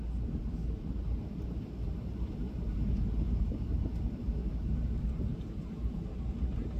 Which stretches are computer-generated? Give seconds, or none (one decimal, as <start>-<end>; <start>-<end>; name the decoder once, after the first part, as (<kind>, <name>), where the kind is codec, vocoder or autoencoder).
0.0-6.8 (vocoder, BigVGAN v2)